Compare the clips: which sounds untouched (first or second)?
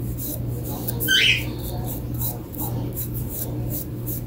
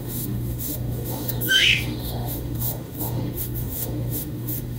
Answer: first